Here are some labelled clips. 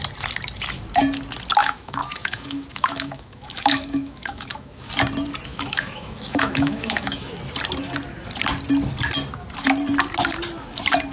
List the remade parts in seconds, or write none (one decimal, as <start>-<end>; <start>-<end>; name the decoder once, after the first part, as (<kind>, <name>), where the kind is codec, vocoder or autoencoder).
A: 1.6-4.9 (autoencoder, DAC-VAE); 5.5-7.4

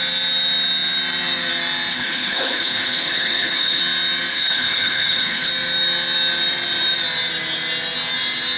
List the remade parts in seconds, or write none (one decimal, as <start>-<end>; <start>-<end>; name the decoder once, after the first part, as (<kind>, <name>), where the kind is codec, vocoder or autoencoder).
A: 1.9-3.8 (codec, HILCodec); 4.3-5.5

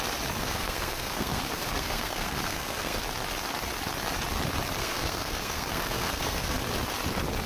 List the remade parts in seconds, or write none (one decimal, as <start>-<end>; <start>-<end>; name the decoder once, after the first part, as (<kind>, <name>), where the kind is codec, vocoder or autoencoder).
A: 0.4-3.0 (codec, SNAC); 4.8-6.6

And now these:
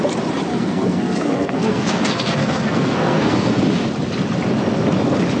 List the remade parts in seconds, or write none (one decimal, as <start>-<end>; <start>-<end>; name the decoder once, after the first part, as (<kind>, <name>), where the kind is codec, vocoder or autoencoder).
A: 0.5-3.6 (codec, SNAC)

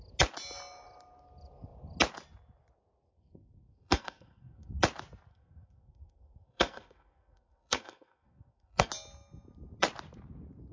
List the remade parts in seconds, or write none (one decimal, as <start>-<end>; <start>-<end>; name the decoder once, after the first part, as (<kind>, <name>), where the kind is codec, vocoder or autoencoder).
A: 3.1-4.7 (codec, SNAC); 5.3-8.9

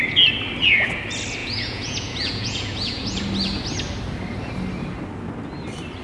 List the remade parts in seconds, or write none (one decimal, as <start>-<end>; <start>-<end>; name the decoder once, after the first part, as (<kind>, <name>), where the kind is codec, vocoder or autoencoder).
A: 1.4-3.2 (vocoder, Vocos)